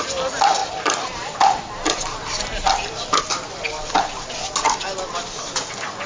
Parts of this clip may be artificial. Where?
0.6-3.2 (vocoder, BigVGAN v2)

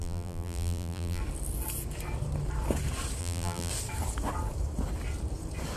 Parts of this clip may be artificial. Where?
0.0-1.2 (vocoder, BigVGAN v2); 3.2-3.7

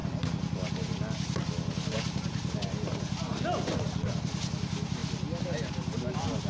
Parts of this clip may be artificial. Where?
none

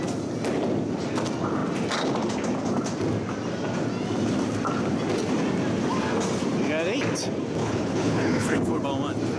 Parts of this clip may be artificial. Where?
7.6-8.8 (codec, HILCodec)

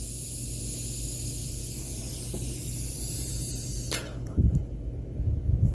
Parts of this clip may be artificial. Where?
1.4-4.6 (vocoder, BigVGAN v2)

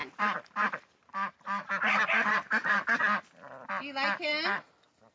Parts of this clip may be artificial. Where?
none

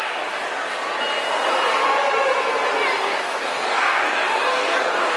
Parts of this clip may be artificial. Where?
0.0-0.4 (codec, DAC); 3.0-5.2

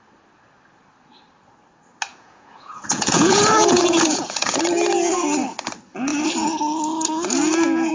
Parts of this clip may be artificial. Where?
2.1-4.6 (vocoder, Vocos)